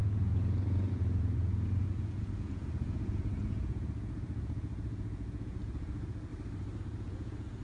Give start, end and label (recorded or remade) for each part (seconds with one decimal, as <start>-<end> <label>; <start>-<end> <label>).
0.0-6.3 remade; 6.3-6.8 recorded; 6.8-7.6 remade